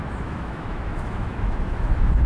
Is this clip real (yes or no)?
no